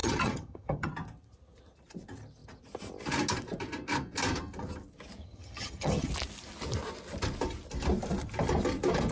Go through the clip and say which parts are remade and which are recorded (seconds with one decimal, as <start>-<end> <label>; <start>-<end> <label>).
0.0-0.9 remade; 0.9-5.2 recorded; 5.2-6.1 remade; 6.1-9.1 recorded